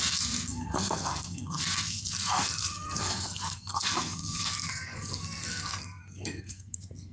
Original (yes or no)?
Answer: no